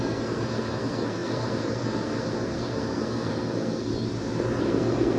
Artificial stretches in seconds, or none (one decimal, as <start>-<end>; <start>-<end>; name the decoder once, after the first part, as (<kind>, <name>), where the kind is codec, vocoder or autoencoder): 0.0-3.9 (codec, SNAC); 4.6-5.2